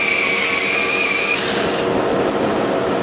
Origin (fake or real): real